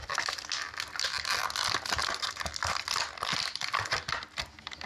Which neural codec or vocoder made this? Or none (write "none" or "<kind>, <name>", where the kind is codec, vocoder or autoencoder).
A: none